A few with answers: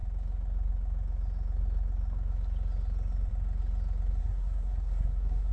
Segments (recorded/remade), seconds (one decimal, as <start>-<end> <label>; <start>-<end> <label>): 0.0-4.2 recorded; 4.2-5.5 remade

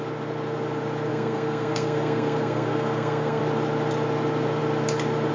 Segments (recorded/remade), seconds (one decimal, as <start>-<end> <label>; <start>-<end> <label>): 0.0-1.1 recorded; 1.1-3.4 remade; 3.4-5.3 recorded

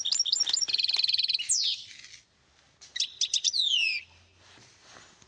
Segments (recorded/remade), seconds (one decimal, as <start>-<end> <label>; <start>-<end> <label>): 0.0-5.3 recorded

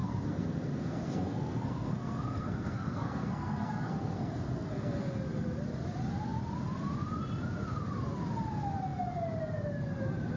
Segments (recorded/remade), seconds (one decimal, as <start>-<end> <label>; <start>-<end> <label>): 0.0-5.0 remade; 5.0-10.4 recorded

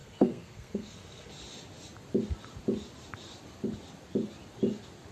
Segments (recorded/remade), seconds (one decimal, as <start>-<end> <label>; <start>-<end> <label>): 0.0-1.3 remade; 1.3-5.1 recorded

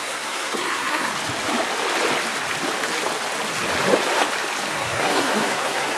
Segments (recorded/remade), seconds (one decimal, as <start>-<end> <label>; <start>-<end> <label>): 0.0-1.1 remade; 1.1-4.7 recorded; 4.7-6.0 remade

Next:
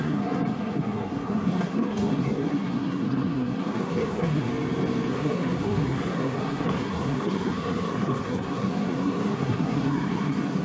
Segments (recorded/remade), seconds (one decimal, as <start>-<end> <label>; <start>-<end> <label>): 0.0-4.5 remade; 4.5-5.1 recorded; 5.1-10.6 remade